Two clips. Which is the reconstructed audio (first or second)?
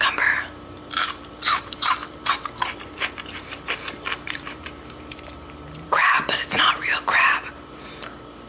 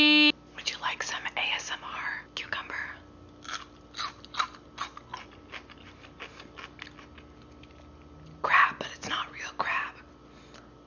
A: first